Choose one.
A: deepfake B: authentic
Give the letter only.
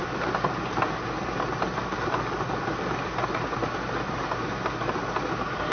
B